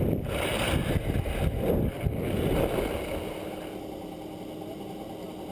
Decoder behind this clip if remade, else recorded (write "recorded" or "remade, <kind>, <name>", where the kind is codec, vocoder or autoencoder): recorded